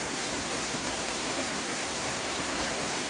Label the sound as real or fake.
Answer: fake